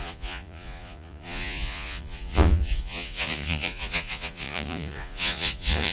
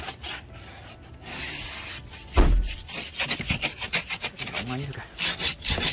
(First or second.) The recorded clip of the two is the second